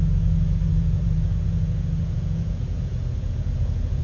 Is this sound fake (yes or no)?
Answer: yes